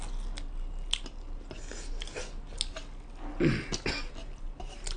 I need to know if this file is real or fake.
real